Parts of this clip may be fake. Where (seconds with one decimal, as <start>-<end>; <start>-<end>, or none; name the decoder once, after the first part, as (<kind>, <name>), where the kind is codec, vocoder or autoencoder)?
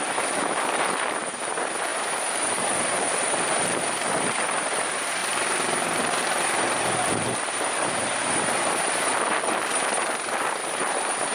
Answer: 0.0-11.3 (vocoder, BigVGAN v2)